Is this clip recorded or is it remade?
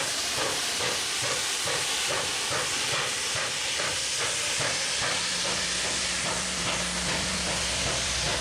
remade